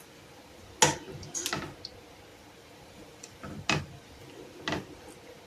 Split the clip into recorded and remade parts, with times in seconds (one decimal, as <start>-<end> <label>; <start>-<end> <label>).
0.0-2.3 recorded; 2.3-4.1 remade; 4.1-5.5 recorded